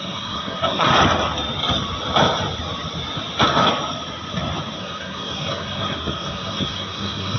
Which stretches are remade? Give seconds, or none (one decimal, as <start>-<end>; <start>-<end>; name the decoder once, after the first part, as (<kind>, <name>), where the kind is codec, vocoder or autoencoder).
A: 0.0-0.9 (codec, SNAC); 4.8-7.4